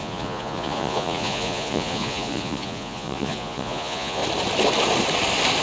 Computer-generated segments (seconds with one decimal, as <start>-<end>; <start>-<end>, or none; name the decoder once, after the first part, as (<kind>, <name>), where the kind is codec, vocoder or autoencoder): 0.0-4.2 (vocoder, Vocos)